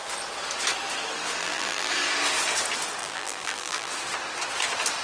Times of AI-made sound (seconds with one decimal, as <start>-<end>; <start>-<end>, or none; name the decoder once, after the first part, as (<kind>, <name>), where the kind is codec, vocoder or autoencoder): 1.4-1.9 (vocoder, BigVGAN v2); 3.0-3.9